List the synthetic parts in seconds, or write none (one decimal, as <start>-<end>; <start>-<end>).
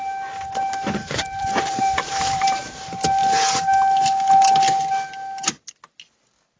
1.0-2.8